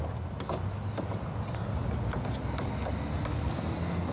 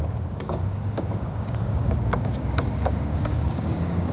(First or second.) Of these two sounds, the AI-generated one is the second